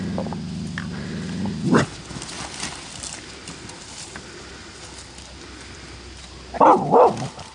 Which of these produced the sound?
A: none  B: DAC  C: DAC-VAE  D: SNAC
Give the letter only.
A